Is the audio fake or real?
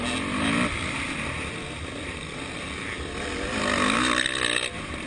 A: real